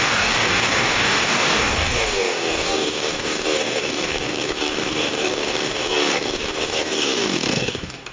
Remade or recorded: remade